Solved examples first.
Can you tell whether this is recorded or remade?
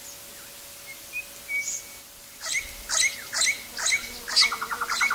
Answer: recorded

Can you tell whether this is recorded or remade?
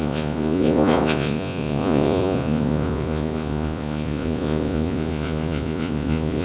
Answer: remade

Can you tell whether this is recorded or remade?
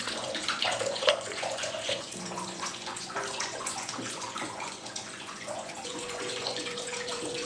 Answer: remade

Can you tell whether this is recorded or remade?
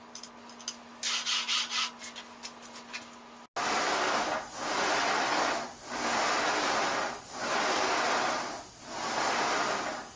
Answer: recorded